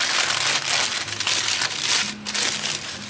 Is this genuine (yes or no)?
yes